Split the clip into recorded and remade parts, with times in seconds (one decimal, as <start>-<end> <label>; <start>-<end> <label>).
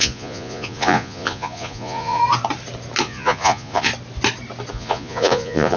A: 0.0-2.2 remade; 2.2-3.0 recorded; 3.0-3.9 remade; 3.9-4.7 recorded; 4.7-5.8 remade